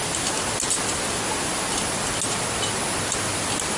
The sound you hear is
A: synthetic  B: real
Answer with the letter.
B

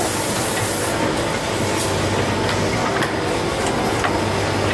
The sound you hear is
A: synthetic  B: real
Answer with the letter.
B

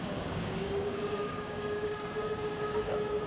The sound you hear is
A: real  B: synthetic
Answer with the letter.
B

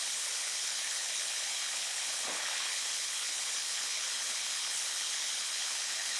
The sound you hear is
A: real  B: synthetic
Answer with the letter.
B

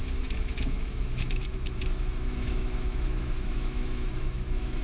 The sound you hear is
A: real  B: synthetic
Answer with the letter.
B